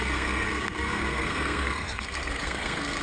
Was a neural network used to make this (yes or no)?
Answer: yes